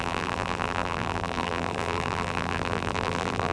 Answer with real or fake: fake